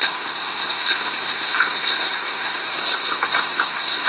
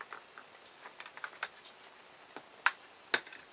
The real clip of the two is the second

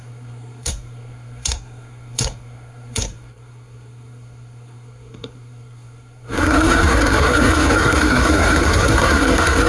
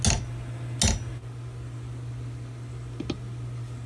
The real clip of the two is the second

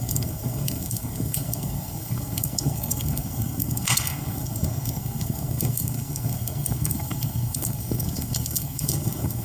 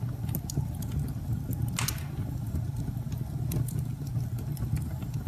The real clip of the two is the second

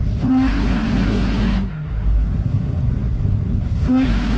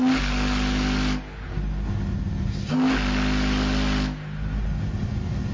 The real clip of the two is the second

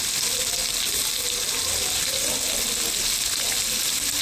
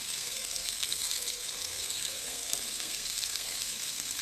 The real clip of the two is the first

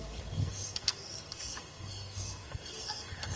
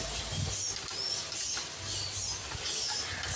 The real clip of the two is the second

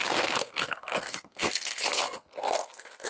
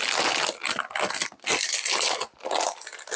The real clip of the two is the second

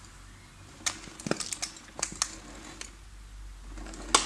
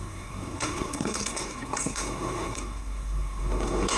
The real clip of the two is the first